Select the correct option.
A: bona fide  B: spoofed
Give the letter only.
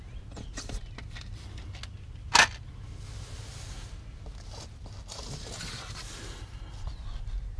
A